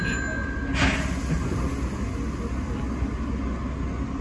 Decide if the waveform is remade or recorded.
recorded